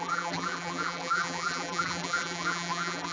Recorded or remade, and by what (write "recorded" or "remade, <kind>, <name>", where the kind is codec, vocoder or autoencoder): remade, vocoder, BigVGAN v2